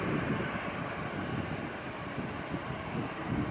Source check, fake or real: real